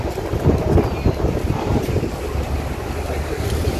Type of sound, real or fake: real